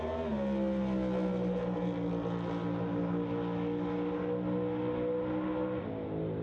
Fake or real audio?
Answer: real